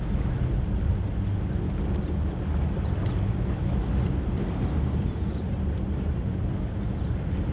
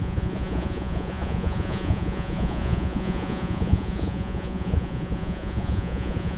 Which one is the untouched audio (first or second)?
first